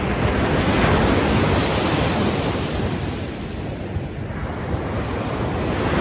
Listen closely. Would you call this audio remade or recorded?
recorded